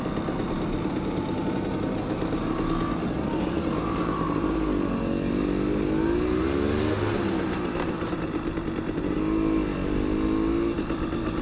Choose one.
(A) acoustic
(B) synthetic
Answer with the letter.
A